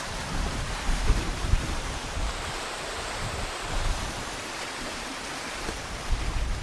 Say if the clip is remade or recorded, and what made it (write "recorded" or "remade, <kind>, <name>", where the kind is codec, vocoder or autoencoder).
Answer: remade, vocoder, BigVGAN v2